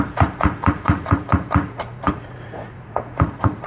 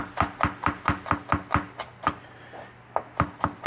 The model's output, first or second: first